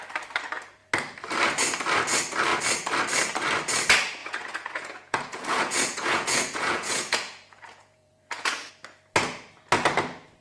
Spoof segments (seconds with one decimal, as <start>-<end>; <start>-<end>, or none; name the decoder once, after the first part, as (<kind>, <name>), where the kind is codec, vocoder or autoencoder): 4.2-8.7 (vocoder, Vocos)